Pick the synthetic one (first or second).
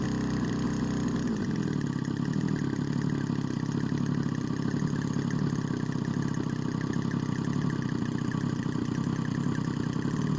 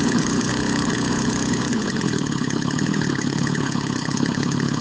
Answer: second